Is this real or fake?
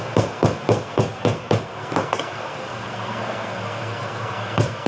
fake